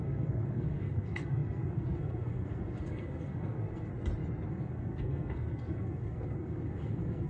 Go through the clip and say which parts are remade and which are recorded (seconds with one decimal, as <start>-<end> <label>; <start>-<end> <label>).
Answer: 0.0-3.9 remade; 3.9-4.5 recorded; 4.5-7.3 remade